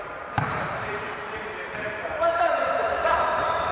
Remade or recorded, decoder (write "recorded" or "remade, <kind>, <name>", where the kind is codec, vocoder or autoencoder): remade, vocoder, BigVGAN v2